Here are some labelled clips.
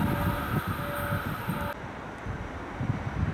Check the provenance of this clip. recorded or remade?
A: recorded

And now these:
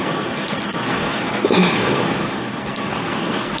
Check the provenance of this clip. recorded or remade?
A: remade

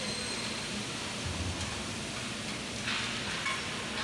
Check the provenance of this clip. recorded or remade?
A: recorded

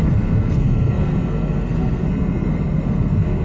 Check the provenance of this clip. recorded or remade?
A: remade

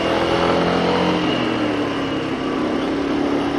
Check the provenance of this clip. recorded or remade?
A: recorded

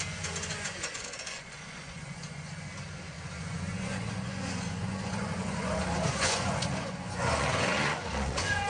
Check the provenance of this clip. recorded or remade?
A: remade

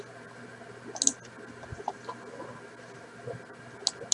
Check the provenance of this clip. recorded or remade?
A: recorded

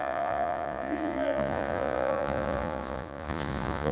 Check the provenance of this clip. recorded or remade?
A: remade